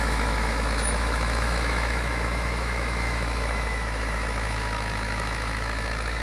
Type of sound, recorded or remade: remade